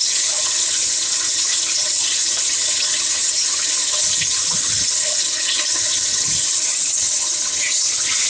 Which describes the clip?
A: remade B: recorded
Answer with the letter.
A